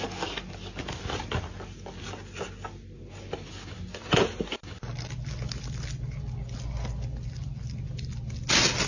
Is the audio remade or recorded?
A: recorded